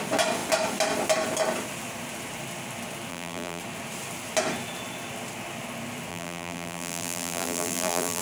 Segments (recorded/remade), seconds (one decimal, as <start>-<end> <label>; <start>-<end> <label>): 0.0-3.1 recorded; 3.1-3.6 remade; 3.6-6.1 recorded; 6.1-8.2 remade